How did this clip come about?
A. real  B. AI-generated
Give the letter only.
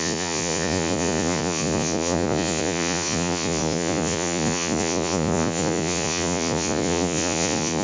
B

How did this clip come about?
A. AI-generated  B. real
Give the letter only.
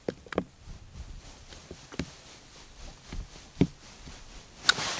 B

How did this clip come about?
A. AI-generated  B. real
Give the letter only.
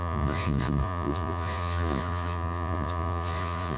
A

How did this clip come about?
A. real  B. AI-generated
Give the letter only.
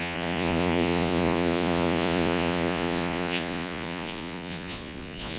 B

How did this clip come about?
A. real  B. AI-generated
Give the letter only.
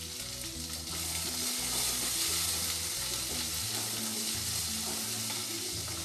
A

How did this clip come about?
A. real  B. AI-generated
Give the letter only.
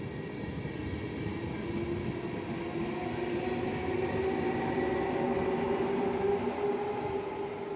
A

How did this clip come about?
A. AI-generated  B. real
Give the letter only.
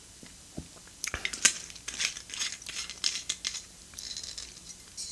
B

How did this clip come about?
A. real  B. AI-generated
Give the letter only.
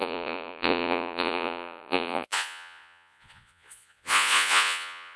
B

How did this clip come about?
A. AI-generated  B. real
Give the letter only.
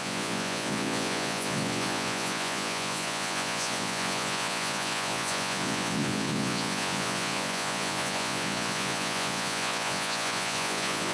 A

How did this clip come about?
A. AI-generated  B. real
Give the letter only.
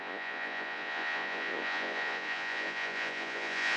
A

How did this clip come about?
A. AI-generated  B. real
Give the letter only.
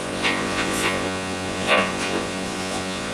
A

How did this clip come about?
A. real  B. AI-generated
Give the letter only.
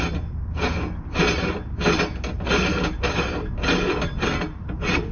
A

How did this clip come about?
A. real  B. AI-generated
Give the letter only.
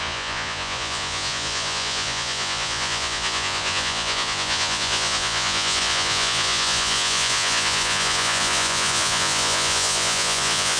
B